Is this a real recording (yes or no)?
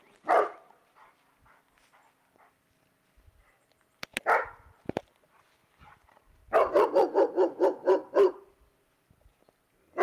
yes